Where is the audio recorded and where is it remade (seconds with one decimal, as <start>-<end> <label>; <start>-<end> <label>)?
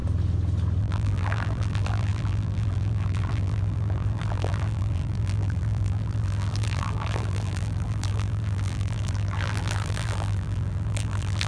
0.0-0.8 recorded; 0.8-11.5 remade